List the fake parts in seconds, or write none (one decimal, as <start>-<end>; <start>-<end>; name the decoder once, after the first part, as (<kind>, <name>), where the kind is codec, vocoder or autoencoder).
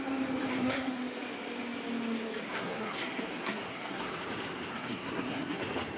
0.5-1.0 (codec, SNAC); 2.4-4.1; 4.7-5.6